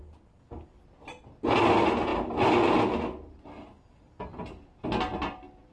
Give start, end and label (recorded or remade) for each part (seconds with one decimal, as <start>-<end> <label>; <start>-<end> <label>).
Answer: 0.0-5.7 recorded